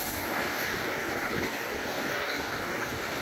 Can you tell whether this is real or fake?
fake